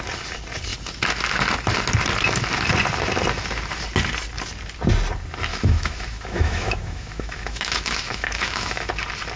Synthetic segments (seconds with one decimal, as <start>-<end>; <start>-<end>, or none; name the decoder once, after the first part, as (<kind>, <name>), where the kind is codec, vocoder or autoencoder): 5.5-8.9 (autoencoder, DAC-VAE)